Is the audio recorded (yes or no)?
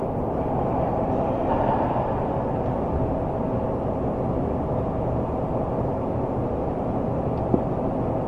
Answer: yes